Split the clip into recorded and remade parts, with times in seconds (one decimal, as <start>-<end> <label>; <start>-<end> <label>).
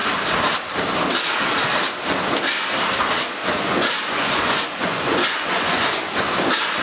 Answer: 0.0-3.4 recorded; 3.4-6.3 remade; 6.3-6.8 recorded